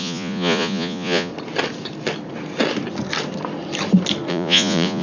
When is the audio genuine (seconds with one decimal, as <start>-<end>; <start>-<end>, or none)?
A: 1.3-4.3